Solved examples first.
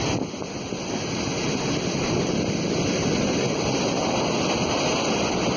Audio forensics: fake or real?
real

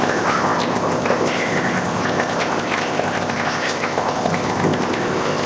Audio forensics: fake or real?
fake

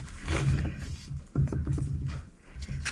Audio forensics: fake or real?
fake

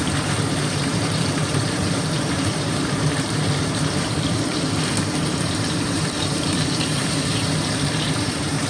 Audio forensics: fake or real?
fake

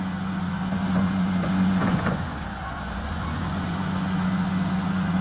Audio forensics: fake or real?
fake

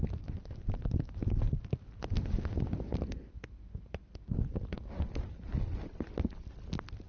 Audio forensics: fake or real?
real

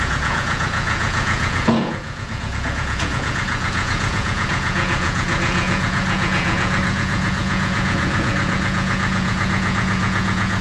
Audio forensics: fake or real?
fake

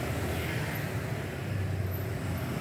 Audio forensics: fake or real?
real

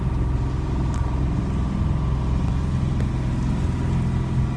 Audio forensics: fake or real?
real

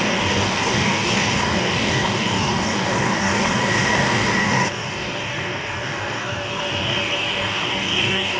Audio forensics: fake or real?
fake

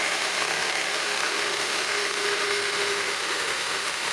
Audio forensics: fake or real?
fake